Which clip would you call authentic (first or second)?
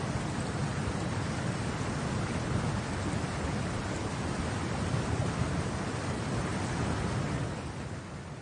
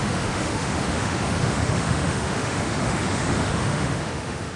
first